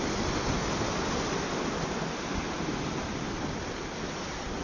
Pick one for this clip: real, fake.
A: real